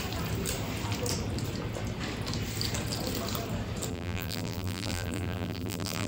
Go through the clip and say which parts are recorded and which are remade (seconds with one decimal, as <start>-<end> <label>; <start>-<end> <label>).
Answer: 0.0-3.9 recorded; 3.9-6.1 remade